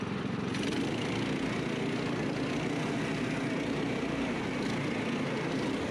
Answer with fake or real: real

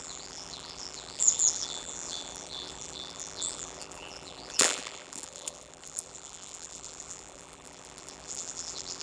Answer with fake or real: fake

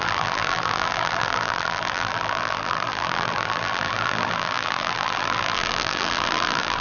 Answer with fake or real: fake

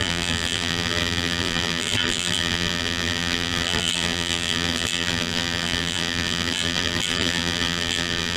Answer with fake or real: fake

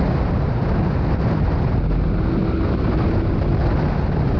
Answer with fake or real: real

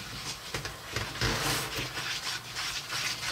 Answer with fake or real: real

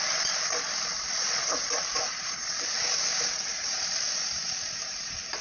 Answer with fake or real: fake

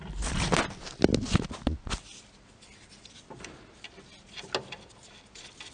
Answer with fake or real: real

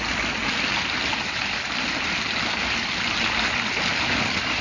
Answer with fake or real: real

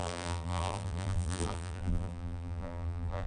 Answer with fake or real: fake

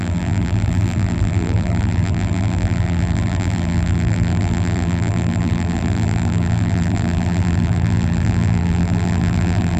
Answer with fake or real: fake